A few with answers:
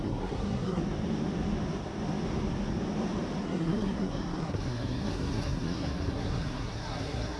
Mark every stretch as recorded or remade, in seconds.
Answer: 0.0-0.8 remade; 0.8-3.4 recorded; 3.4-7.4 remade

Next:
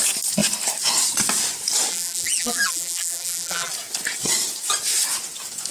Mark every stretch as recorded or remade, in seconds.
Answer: 0.0-1.9 recorded; 1.9-3.7 remade; 3.7-5.7 recorded

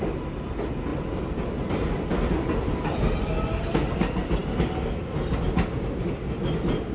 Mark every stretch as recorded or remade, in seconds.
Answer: 0.0-6.9 recorded

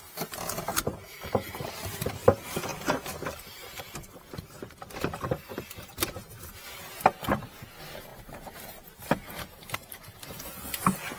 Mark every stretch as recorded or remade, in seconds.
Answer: 0.0-0.7 recorded; 0.7-1.7 remade; 1.7-8.1 recorded; 8.1-10.2 remade; 10.2-11.2 recorded

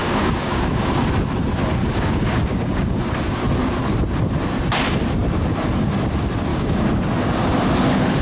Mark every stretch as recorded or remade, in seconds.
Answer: 0.0-1.0 remade; 1.0-1.8 recorded; 1.8-3.4 remade; 3.4-6.5 recorded; 6.5-7.0 remade; 7.0-8.2 recorded